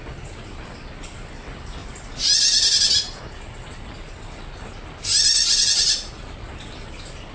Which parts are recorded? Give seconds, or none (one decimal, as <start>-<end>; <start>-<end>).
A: 0.0-7.3